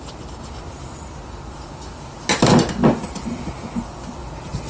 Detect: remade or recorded recorded